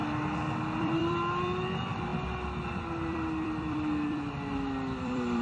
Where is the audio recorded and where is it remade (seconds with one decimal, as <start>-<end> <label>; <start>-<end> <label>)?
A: 0.0-0.6 recorded; 0.6-2.1 remade; 2.1-2.8 recorded; 2.8-5.4 remade